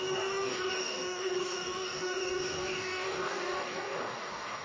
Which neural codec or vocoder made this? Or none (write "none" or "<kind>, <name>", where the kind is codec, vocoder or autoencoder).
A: codec, DAC